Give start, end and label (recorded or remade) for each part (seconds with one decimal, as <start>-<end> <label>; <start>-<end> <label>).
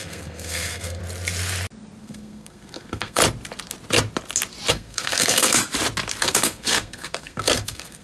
0.0-1.0 remade; 1.0-2.0 recorded; 2.0-3.2 remade; 3.2-4.7 recorded; 4.7-5.6 remade; 5.6-6.2 recorded; 6.2-8.0 remade